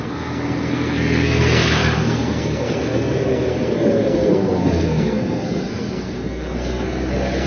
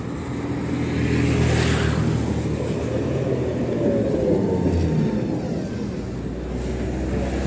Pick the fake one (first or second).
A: first